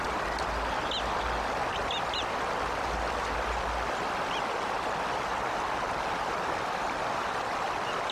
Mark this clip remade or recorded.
recorded